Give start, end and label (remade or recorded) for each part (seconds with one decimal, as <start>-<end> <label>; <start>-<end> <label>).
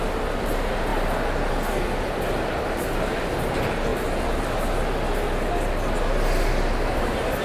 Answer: 0.0-7.4 recorded